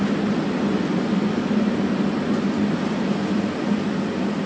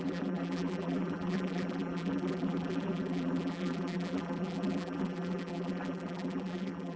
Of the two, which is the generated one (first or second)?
second